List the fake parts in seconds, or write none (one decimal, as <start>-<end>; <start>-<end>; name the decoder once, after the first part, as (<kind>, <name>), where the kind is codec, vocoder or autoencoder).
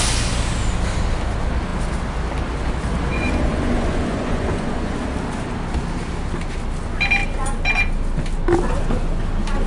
3.1-5.0 (vocoder, Vocos)